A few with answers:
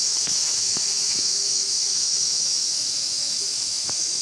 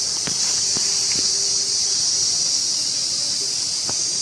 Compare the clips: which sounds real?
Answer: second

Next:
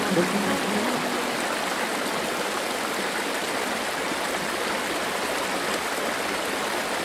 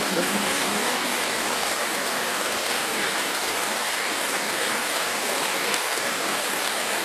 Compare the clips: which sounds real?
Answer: first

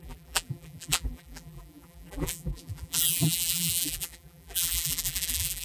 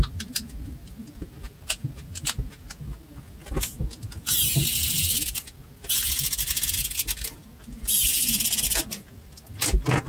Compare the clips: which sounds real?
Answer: second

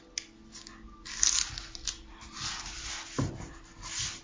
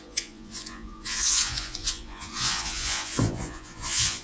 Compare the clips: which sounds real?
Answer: first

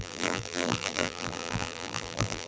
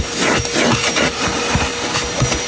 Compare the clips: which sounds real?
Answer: second